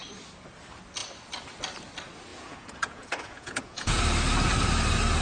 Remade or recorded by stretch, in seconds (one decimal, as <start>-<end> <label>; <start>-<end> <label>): 0.0-2.3 recorded; 2.3-4.0 remade; 4.0-5.2 recorded

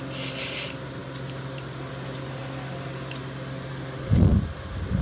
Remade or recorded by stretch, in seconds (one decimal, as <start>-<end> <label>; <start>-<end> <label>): 0.0-4.3 recorded; 4.3-5.0 remade